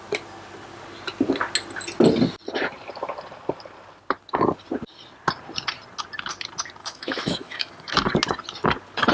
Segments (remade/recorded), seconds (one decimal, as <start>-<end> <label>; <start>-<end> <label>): 0.0-6.8 recorded; 6.8-7.9 remade; 7.9-9.1 recorded